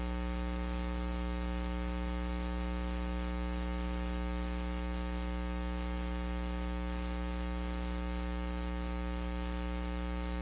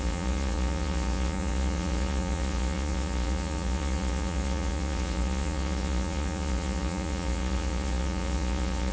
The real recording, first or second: first